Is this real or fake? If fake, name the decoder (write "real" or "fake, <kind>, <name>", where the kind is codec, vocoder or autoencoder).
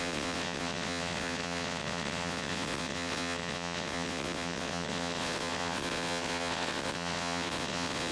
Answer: fake, vocoder, WaveNeXt